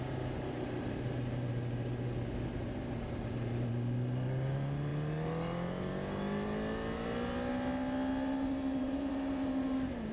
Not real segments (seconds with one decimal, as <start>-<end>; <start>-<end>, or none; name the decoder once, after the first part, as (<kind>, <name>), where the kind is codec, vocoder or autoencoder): 2.6-3.4 (vocoder, BigVGAN v2); 8.8-10.1